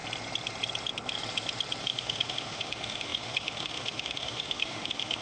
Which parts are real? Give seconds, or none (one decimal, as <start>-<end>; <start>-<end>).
0.0-1.8